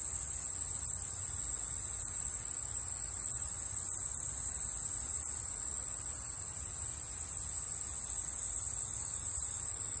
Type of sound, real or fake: real